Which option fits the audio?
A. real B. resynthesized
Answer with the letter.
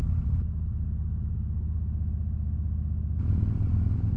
A